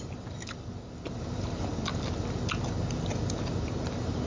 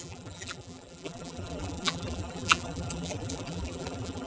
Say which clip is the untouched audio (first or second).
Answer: first